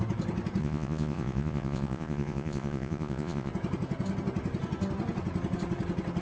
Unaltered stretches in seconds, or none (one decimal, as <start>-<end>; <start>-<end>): 0.0-0.6; 3.5-6.2